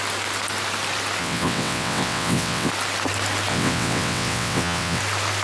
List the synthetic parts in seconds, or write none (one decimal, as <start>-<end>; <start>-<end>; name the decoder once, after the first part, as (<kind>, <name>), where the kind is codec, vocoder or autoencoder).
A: 1.2-2.7 (vocoder, WaveNeXt); 3.5-5.0